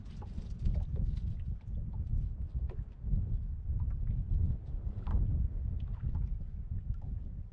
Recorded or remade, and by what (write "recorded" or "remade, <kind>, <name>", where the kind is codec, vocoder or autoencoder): recorded